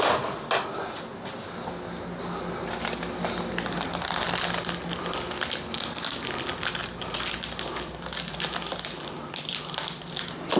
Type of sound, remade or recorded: recorded